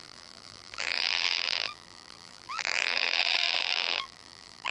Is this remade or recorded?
remade